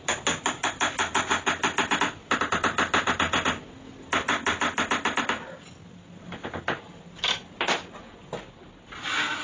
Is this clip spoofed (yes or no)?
no